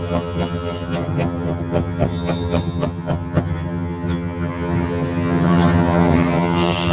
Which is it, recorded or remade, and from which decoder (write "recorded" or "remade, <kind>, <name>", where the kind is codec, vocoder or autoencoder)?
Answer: remade, vocoder, HiFi-GAN